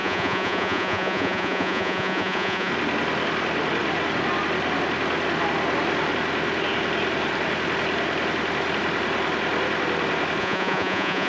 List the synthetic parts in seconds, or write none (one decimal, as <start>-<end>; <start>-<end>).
0.0-2.7; 10.4-11.3